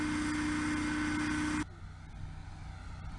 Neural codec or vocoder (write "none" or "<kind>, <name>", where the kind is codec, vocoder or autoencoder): none